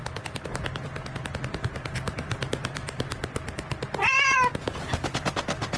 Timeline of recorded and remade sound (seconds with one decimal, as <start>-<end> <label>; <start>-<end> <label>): 0.0-5.8 recorded